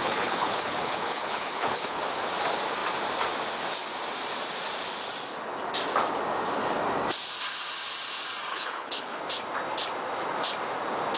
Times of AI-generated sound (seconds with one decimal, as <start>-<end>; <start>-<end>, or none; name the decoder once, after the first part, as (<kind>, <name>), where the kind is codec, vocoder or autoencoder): 0.0-2.0 (codec, HILCodec); 8.5-9.2

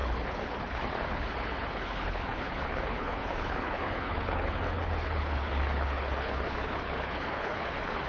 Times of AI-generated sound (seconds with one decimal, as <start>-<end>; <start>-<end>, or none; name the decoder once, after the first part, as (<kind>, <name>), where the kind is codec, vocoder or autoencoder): 0.0-8.1 (codec, HILCodec)

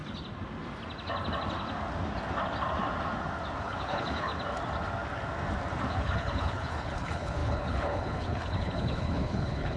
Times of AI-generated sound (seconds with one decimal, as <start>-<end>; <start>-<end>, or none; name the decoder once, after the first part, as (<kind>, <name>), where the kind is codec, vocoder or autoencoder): 3.6-4.3 (codec, HILCodec); 5.9-9.8

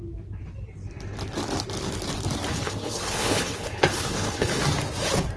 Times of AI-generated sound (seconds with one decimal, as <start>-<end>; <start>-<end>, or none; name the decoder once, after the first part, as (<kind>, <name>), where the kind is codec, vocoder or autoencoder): 2.5-4.6 (codec, HILCodec)

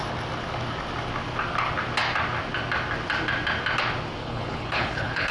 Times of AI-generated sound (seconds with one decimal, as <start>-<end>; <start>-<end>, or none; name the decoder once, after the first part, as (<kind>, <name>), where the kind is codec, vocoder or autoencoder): 4.2-5.3 (codec, HILCodec)

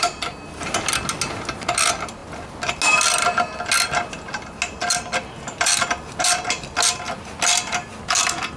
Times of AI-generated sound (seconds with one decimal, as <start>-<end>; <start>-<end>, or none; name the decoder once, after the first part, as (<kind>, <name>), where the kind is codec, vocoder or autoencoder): none